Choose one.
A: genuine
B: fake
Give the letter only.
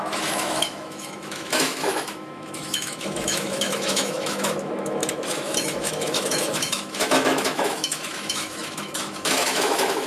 B